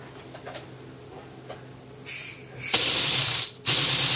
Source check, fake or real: real